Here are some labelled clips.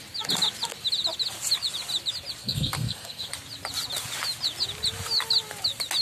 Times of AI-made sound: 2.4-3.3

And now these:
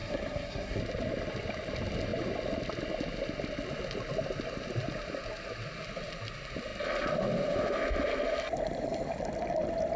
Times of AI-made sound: 0.0-0.8

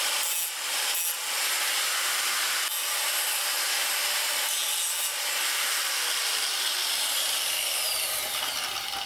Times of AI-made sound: none

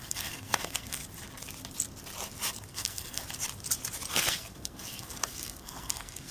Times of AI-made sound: 0.0-1.0; 2.7-3.2; 4.1-6.3

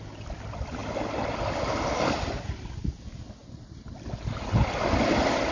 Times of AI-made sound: none